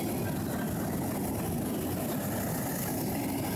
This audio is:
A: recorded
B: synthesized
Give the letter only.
A